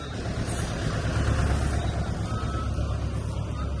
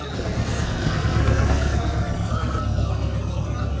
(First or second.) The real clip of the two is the first